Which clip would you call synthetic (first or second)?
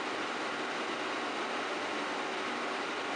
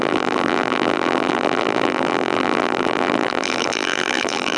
second